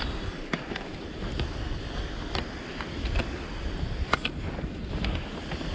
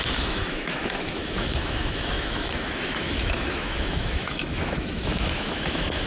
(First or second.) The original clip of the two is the first